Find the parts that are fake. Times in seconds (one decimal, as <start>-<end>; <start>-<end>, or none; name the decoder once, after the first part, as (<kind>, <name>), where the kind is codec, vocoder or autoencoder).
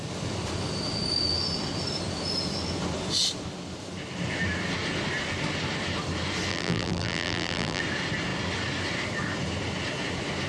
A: 6.5-7.8 (vocoder, BigVGAN v2)